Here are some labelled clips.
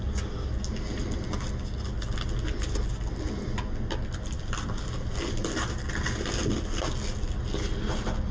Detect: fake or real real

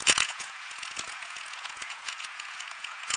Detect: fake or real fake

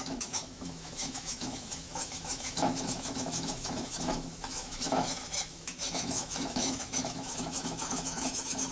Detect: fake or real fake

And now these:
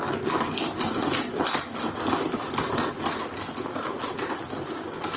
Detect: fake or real real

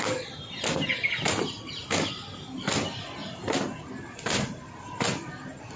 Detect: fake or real real